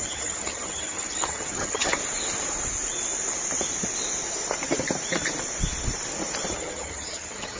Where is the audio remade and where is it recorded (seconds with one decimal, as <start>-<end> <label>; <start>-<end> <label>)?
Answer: 0.0-2.0 remade; 2.0-6.5 recorded; 6.5-7.6 remade

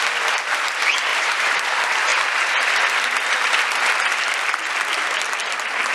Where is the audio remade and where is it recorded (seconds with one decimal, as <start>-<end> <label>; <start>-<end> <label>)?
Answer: 0.0-1.1 recorded; 1.1-1.6 remade; 1.6-5.9 recorded